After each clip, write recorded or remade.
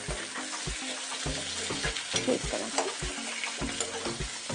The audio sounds recorded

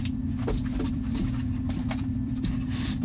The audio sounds remade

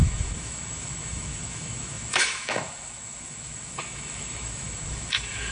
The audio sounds remade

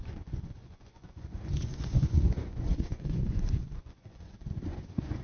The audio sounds remade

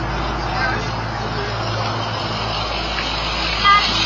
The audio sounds recorded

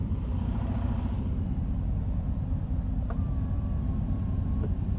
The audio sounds recorded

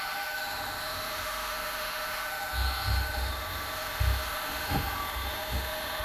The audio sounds remade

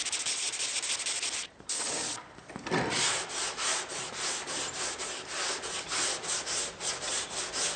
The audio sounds recorded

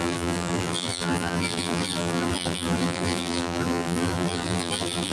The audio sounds remade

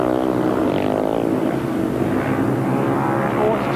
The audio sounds recorded